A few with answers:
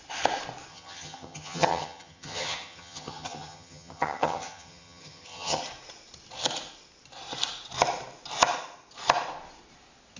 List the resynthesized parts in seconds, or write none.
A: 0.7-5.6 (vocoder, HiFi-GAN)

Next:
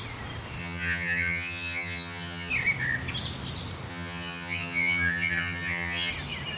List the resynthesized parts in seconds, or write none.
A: 0.6-2.5 (vocoder, HiFi-GAN); 3.9-6.1

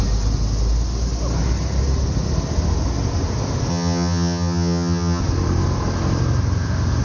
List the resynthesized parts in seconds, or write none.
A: 3.7-5.2 (vocoder, HiFi-GAN)

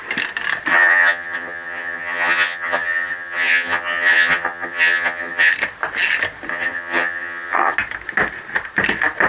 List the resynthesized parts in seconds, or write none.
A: 0.7-5.5 (vocoder, HiFi-GAN); 6.5-7.7

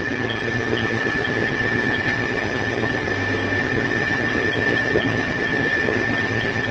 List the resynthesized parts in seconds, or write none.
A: 0.0-3.1 (vocoder, HiFi-GAN); 3.6-6.7